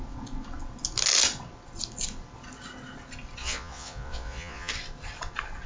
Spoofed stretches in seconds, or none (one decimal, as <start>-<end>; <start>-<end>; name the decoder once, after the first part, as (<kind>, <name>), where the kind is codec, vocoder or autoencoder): 3.4-4.7 (vocoder, Vocos)